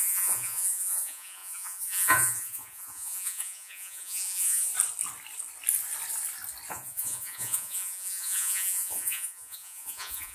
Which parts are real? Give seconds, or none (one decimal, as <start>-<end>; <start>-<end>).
4.7-6.7